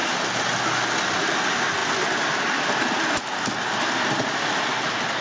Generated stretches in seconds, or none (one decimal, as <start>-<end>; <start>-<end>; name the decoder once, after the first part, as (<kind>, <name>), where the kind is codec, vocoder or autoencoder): none